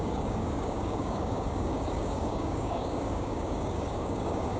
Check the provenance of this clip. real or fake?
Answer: fake